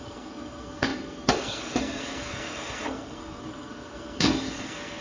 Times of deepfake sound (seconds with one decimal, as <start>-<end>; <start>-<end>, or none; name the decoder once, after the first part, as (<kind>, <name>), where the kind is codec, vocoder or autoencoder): 0.0-5.0 (codec, SNAC)